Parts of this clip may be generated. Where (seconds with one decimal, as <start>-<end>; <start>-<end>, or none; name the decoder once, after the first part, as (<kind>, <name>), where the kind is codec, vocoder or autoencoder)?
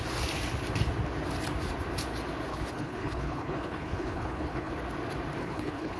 2.5-4.7 (codec, HILCodec); 5.4-6.0